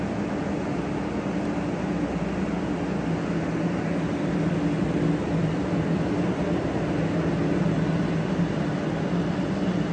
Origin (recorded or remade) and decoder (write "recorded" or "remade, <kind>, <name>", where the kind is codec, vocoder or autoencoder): recorded